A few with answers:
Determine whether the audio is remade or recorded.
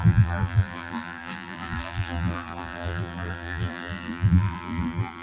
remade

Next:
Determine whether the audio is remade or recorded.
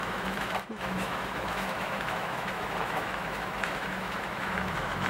remade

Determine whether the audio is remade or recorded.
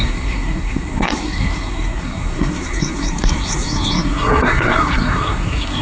remade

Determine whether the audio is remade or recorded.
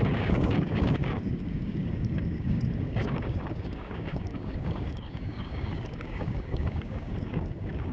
remade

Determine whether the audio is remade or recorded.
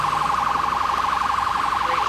recorded